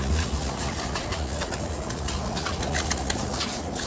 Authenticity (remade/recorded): remade